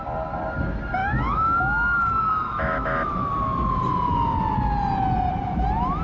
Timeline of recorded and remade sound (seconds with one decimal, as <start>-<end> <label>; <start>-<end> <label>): 0.0-1.0 recorded; 1.0-3.3 remade; 3.3-6.0 recorded